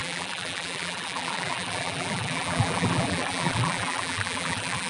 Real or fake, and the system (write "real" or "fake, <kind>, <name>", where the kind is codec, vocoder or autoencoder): fake, vocoder, BigVGAN v2